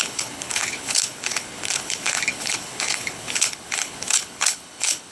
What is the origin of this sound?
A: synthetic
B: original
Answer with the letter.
A